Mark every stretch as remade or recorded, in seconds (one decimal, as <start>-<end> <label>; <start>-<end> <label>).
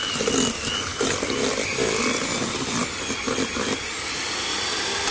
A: 0.0-5.1 recorded